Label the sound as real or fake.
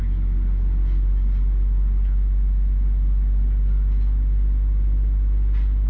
real